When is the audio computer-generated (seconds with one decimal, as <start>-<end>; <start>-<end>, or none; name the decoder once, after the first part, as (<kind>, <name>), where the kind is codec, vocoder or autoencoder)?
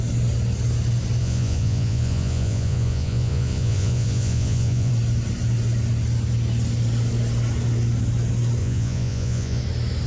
1.2-4.9 (vocoder, Vocos); 8.6-9.6